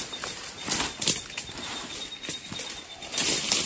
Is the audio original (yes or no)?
yes